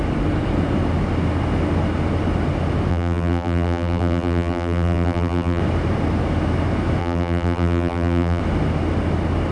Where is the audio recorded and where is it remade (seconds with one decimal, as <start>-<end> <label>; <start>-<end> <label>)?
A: 0.0-2.9 recorded; 2.9-5.6 remade; 5.6-7.0 recorded; 7.0-8.4 remade; 8.4-9.5 recorded